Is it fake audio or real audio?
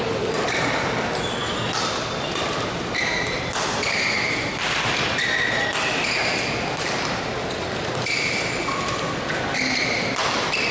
real